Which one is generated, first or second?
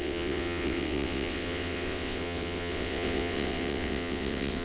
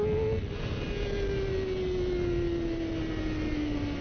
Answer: first